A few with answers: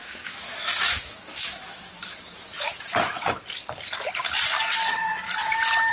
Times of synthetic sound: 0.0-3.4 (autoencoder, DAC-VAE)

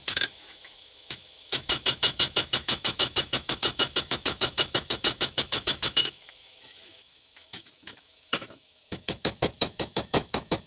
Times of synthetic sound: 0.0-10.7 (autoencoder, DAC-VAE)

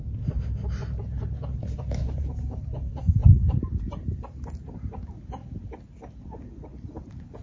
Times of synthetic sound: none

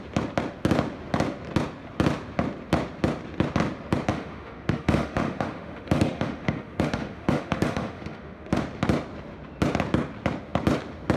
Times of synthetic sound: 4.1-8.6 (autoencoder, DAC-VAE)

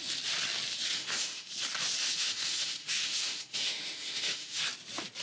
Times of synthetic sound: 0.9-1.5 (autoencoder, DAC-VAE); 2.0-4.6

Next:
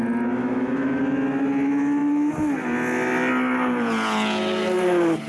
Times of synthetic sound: 0.4-1.0 (autoencoder, DAC-VAE)

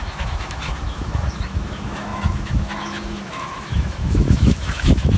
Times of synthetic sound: 0.0-5.2 (autoencoder, DAC-VAE)

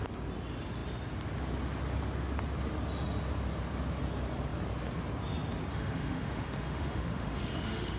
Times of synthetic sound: 5.7-8.0 (autoencoder, DAC-VAE)